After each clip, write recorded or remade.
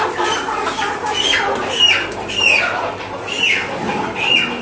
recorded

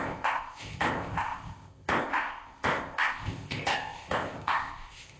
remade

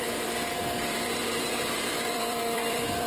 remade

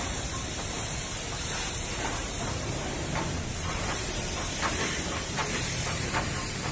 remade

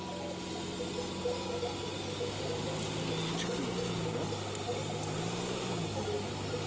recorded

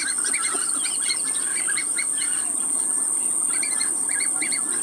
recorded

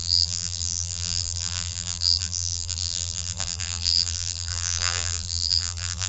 remade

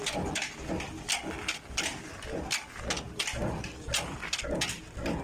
recorded